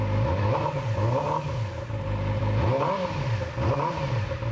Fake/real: real